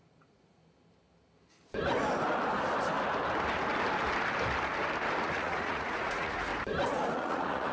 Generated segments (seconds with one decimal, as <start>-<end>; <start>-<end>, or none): 0.0-0.6; 5.2-6.5; 7.1-7.7